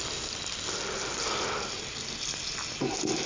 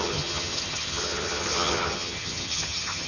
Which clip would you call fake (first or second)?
second